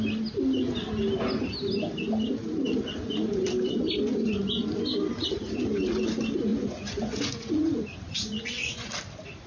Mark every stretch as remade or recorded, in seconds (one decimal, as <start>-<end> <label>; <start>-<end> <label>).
0.0-6.5 recorded; 6.5-8.9 remade; 8.9-9.5 recorded